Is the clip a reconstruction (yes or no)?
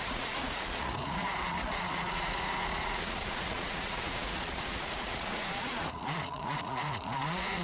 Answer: yes